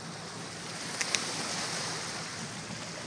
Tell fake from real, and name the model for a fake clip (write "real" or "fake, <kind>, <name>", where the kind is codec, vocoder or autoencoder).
real